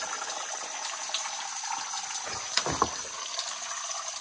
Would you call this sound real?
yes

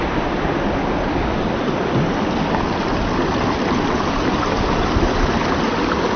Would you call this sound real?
yes